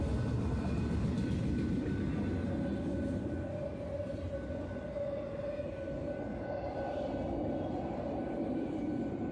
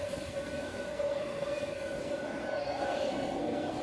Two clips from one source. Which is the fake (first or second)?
second